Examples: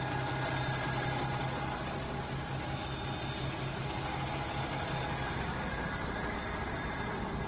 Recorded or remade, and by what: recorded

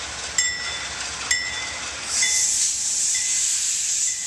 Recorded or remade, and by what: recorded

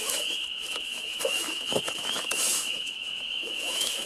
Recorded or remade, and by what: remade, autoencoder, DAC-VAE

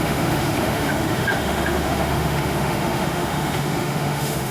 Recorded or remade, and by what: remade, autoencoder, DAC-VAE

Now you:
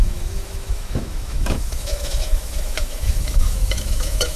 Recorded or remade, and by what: remade, autoencoder, DAC-VAE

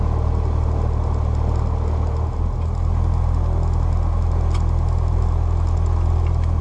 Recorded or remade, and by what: recorded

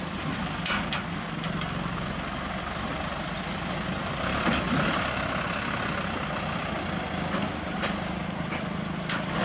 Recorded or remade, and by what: recorded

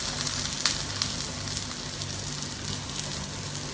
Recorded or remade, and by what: recorded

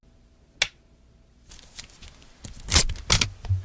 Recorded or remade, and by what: recorded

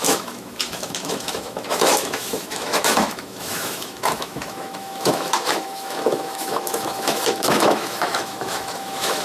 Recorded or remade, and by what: remade, autoencoder, DAC-VAE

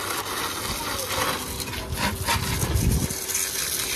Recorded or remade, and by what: recorded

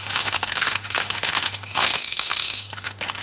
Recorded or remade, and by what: remade, autoencoder, DAC-VAE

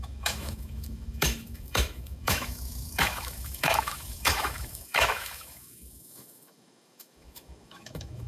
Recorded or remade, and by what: remade, autoencoder, DAC-VAE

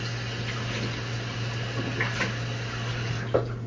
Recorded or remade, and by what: recorded